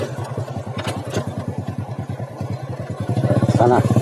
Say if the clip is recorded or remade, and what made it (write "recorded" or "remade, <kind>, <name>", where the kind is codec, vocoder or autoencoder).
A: recorded